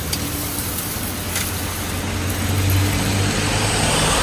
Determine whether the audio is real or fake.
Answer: real